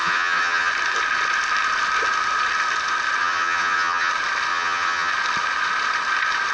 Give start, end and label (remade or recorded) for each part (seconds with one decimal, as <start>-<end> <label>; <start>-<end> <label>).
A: 0.0-0.7 remade; 0.7-3.2 recorded; 3.2-4.1 remade; 4.1-4.5 recorded; 4.5-5.1 remade; 5.1-6.5 recorded